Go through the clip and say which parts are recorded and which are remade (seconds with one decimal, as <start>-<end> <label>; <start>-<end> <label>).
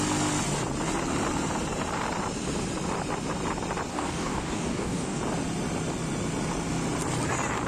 0.0-3.9 recorded; 3.9-5.2 remade; 5.2-7.7 recorded